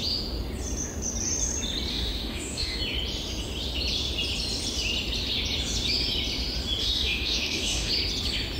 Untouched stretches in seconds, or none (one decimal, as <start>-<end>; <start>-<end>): 0.0-1.9; 2.8-6.8; 7.9-8.6